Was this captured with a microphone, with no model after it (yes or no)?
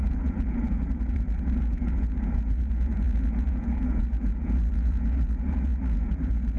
no